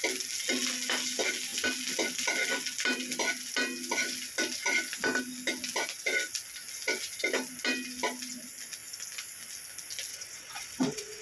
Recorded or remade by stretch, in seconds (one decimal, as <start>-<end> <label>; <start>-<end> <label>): 0.0-10.1 recorded; 10.1-11.2 remade